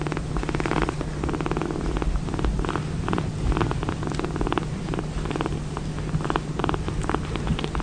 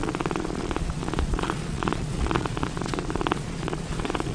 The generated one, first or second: second